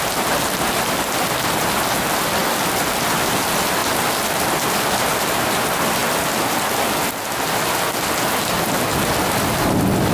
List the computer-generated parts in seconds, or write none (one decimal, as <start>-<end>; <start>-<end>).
none